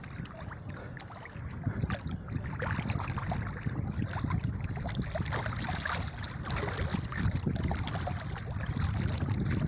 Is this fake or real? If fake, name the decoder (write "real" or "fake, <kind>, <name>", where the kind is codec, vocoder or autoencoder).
real